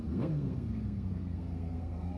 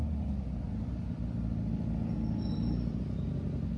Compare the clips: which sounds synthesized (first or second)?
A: first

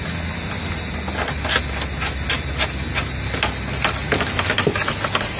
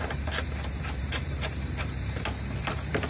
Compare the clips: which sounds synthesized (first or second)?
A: second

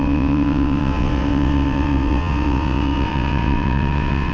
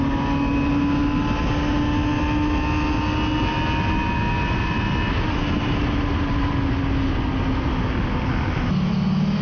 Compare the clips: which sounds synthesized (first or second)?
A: first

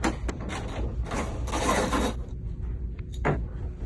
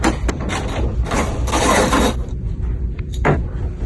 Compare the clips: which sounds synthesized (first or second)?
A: second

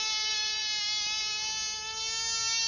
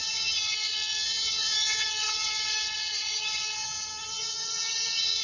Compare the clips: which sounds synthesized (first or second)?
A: second